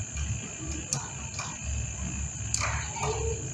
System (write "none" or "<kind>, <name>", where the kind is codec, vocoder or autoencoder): none